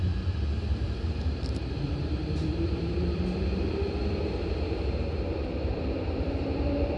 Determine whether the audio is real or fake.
fake